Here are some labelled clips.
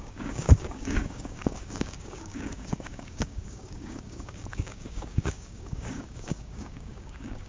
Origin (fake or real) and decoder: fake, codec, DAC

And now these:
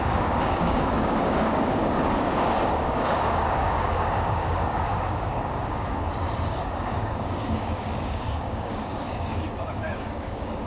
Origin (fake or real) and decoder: fake, codec, DAC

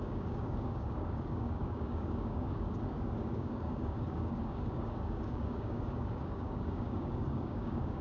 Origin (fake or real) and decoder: fake, codec, DAC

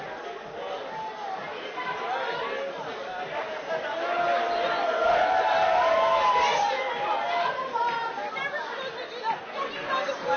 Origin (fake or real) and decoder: real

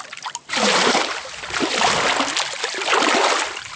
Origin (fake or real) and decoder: real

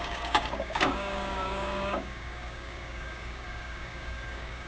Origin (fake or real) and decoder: fake, codec, DAC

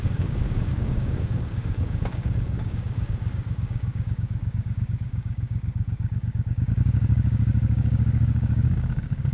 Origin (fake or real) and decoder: fake, codec, DAC